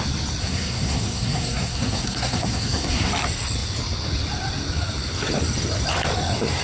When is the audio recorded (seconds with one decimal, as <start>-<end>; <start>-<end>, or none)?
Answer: 0.0-0.4; 3.1-6.6

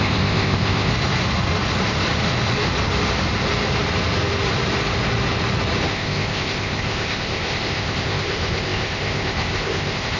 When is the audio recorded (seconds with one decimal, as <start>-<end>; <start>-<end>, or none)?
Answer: 0.9-5.9